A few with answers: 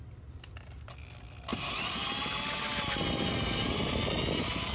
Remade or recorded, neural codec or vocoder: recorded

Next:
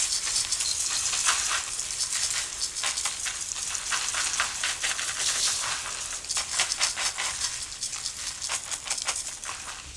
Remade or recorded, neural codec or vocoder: recorded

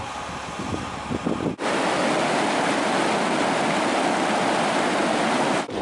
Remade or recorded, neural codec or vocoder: recorded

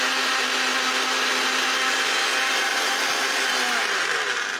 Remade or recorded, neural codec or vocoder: recorded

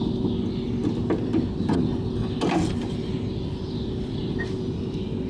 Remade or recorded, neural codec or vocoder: recorded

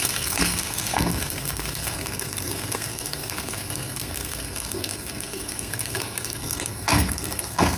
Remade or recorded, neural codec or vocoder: remade, codec, SNAC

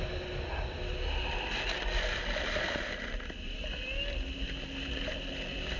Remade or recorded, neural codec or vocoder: recorded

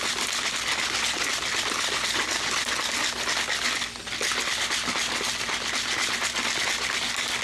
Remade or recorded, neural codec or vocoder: recorded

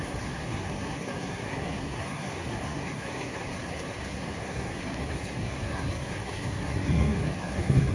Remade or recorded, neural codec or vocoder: remade, codec, SNAC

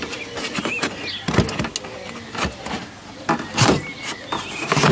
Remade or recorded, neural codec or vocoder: recorded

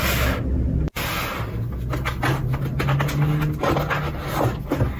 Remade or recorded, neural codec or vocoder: recorded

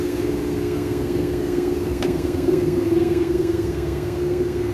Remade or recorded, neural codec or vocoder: remade, codec, SNAC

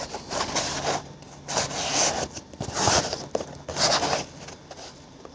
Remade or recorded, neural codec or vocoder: recorded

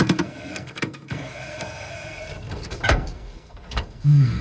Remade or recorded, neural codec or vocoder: remade, codec, SNAC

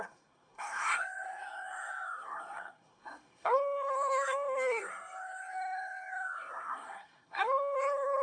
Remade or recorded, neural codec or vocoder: remade, codec, SNAC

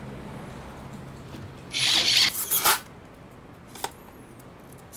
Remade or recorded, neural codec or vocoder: recorded